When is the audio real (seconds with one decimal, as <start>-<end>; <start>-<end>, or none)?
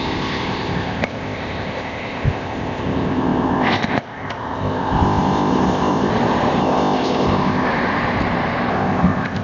6.1-6.6; 7.7-8.7